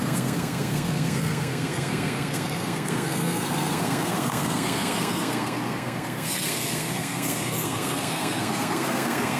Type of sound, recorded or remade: remade